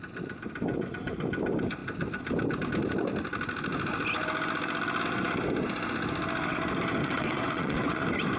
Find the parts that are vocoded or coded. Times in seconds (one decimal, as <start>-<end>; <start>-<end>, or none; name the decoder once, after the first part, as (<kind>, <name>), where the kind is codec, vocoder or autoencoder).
7.0-8.0 (vocoder, WaveNeXt)